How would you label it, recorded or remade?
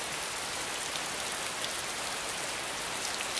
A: recorded